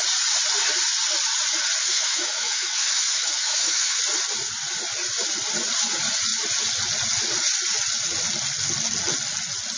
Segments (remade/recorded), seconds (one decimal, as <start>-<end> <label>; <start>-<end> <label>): 0.0-1.8 recorded; 1.8-4.0 remade; 4.0-9.8 recorded